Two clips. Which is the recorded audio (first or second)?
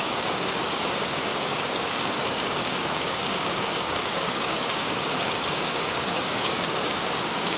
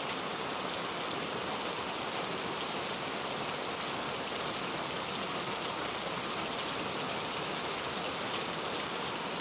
second